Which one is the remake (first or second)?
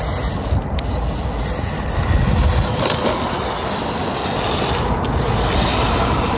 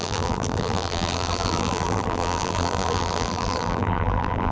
second